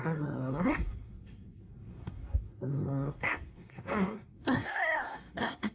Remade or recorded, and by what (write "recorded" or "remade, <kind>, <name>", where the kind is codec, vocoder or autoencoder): remade, codec, SNAC